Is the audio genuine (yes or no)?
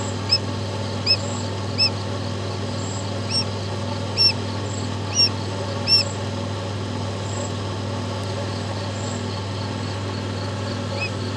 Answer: yes